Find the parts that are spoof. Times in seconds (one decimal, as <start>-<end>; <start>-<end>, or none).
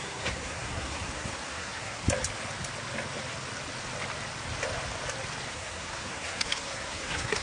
0.0-2.0; 5.5-7.4